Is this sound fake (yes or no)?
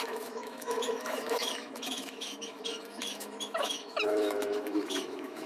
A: yes